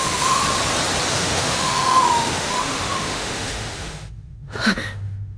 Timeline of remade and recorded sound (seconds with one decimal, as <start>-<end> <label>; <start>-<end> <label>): 0.0-0.4 remade; 0.4-1.1 recorded; 1.1-5.4 remade